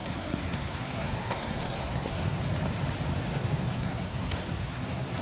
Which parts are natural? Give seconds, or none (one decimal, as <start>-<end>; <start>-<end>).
2.4-3.3